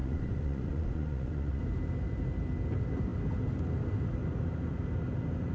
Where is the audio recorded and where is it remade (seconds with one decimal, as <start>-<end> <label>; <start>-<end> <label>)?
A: 0.0-1.6 remade; 1.6-5.5 recorded